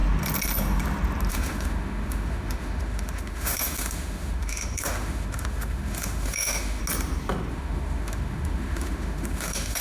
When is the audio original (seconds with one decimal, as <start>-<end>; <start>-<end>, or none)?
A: 0.0-1.3; 6.8-7.5